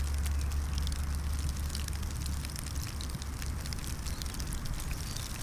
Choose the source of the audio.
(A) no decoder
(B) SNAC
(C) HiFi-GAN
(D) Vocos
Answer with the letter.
A